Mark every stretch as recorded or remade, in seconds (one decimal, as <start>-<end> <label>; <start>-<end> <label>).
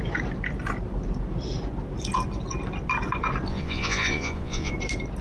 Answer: 0.0-3.5 recorded; 3.5-4.7 remade; 4.7-5.2 recorded